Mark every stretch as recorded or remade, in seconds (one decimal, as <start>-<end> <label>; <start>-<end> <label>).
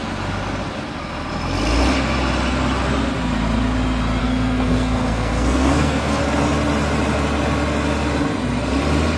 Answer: 0.0-4.2 recorded; 4.2-6.2 remade; 6.2-9.2 recorded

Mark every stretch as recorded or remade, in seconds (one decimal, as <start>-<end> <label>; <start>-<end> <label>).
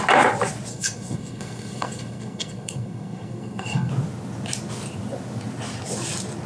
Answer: 0.0-0.7 recorded; 0.7-3.9 remade; 3.9-6.5 recorded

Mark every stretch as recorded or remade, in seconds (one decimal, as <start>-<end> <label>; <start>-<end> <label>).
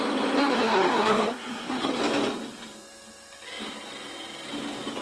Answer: 0.0-0.4 recorded; 0.4-2.0 remade; 2.0-5.0 recorded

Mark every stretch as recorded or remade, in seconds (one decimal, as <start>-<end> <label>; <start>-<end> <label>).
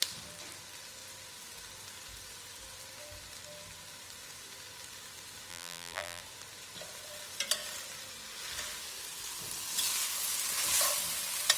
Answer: 0.0-5.5 recorded; 5.5-6.2 remade; 6.2-11.6 recorded